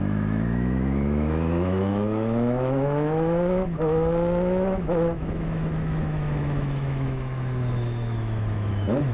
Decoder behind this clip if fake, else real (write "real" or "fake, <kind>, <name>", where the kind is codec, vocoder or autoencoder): fake, autoencoder, DAC-VAE